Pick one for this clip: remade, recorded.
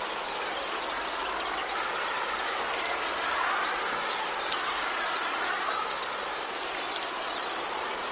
recorded